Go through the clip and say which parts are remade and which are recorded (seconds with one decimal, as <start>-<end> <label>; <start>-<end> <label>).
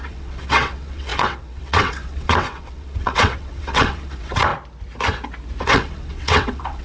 0.0-4.5 remade; 4.5-5.6 recorded; 5.6-6.8 remade